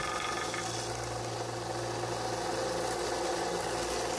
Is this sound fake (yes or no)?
no